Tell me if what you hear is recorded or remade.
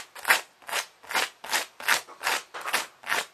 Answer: recorded